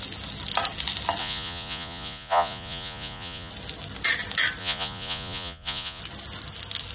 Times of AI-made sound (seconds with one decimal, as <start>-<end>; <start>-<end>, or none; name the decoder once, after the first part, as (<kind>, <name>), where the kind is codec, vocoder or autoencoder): 1.2-3.5 (vocoder, Vocos); 4.6-6.0